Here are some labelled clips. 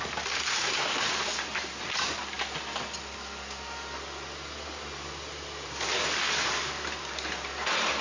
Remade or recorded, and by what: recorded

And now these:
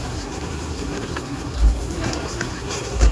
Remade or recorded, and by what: remade, codec, SNAC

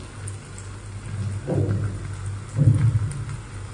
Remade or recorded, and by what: recorded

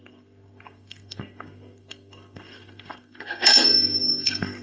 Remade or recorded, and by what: remade, codec, SNAC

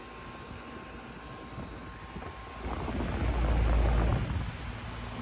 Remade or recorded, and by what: recorded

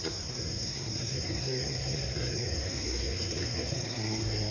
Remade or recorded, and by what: remade, codec, SNAC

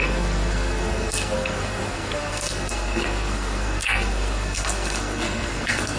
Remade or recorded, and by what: remade, codec, SNAC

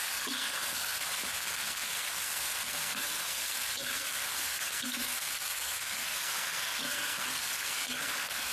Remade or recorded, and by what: remade, codec, SNAC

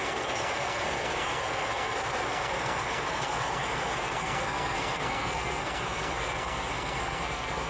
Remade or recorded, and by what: remade, codec, SNAC